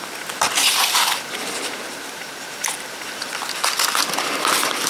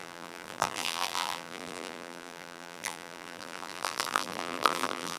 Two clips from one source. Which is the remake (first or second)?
second